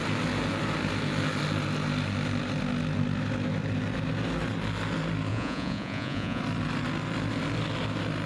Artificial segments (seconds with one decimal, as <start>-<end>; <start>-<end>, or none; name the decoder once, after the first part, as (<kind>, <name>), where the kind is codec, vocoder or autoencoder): 5.3-6.4 (vocoder, Vocos)